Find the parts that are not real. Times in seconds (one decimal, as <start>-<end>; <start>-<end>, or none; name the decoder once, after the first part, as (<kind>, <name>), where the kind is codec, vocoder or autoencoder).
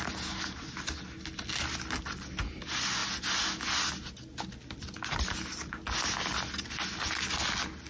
none